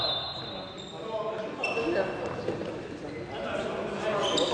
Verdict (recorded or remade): recorded